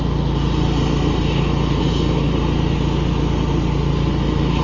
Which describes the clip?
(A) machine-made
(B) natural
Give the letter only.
B